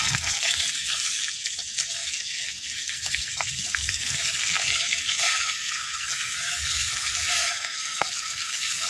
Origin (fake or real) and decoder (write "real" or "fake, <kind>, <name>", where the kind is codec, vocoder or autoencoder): fake, codec, SNAC